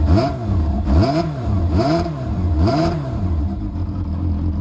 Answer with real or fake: fake